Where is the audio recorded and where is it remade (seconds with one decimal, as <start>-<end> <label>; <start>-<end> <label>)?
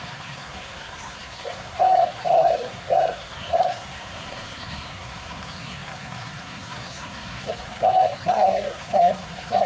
0.0-9.7 remade